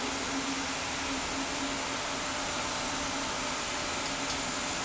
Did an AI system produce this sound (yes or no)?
no